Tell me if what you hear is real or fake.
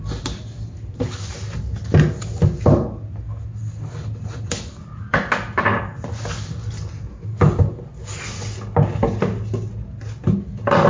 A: real